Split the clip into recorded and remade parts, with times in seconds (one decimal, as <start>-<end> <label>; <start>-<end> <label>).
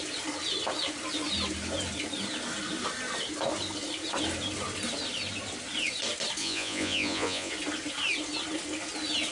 0.0-6.4 recorded; 6.4-7.5 remade; 7.5-9.3 recorded